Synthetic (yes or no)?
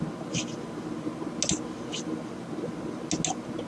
no